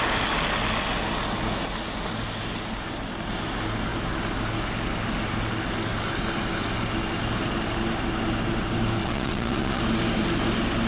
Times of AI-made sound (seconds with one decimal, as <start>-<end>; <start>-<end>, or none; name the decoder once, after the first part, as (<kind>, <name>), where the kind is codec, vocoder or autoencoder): 9.0-9.8 (vocoder, Vocos)